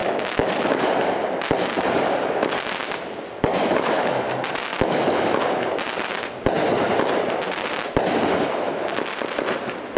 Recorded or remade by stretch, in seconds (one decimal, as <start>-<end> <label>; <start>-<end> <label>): 0.0-0.8 remade; 0.8-3.5 recorded; 3.5-4.3 remade; 4.3-4.7 recorded; 4.7-5.4 remade; 5.4-10.0 recorded